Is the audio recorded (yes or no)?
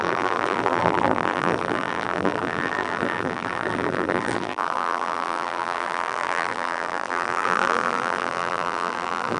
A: no